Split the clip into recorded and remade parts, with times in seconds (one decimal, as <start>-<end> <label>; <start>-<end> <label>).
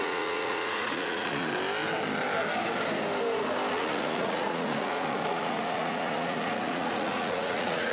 0.0-1.5 remade; 1.5-3.7 recorded; 3.7-7.9 remade